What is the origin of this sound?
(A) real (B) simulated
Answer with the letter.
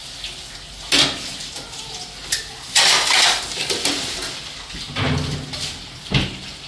A